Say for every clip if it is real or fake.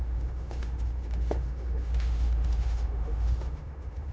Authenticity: fake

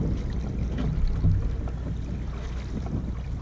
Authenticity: real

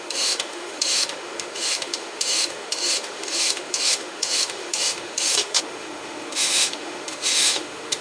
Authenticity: fake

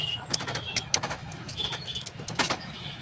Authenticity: fake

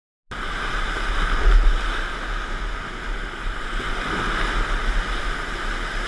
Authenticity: real